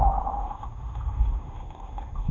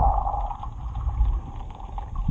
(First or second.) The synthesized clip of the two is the first